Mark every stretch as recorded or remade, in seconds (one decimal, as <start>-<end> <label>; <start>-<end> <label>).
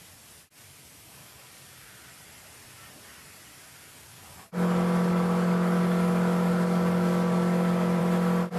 0.0-1.2 recorded; 1.2-2.0 remade; 2.0-4.1 recorded; 4.1-8.0 remade; 8.0-8.6 recorded